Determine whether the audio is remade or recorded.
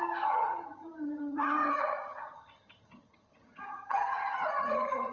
remade